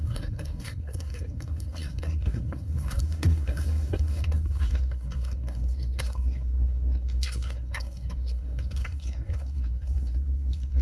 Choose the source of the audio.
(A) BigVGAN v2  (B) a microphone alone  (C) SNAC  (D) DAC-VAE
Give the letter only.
C